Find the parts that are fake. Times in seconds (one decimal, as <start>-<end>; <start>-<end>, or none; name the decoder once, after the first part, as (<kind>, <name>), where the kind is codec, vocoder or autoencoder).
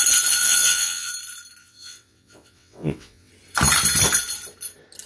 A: 0.4-1.1 (vocoder, WaveNeXt); 1.6-3.3